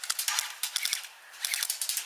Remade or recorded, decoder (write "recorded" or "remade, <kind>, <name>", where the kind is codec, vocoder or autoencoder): remade, vocoder, BigVGAN v2